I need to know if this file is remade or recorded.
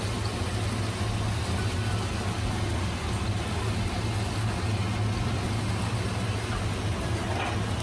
recorded